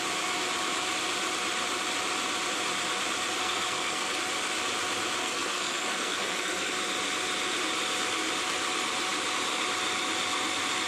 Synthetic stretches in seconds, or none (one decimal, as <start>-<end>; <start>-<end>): 3.4-4.2; 5.2-6.7